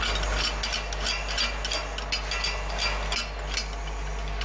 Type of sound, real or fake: real